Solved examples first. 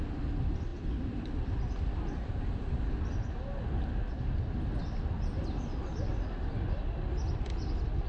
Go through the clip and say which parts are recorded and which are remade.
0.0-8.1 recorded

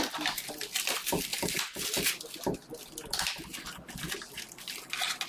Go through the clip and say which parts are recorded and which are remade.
0.0-5.3 recorded

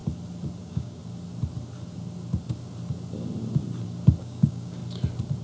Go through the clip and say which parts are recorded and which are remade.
0.0-0.6 recorded; 0.6-1.0 remade; 1.0-4.2 recorded; 4.2-4.8 remade; 4.8-5.4 recorded